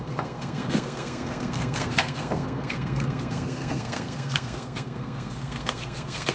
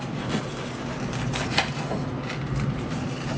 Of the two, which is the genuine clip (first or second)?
second